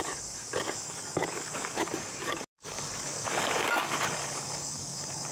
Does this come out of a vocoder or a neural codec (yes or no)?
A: yes